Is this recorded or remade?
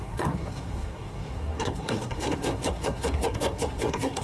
remade